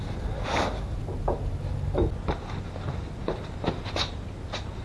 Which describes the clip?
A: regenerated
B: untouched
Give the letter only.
B